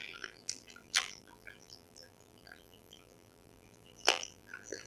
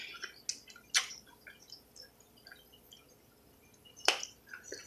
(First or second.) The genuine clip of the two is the second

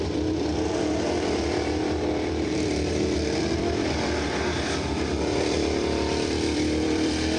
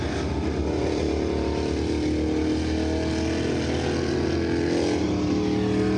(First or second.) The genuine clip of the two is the second